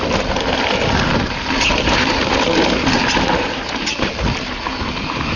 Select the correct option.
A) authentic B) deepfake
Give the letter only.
A